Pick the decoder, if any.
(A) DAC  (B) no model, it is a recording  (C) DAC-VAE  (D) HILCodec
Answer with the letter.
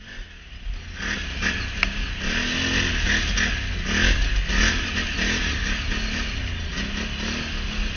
B